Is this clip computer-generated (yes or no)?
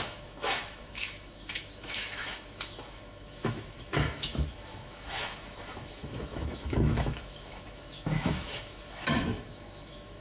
yes